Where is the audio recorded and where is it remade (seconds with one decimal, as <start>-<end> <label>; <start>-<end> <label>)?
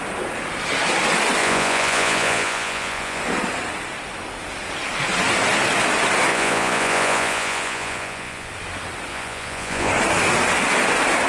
0.0-1.4 recorded; 1.4-3.2 remade; 3.2-6.3 recorded; 6.3-8.5 remade; 8.5-9.1 recorded; 9.1-9.9 remade; 9.9-11.3 recorded